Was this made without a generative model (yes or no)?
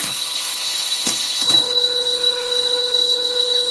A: no